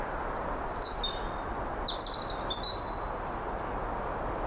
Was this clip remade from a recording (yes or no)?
no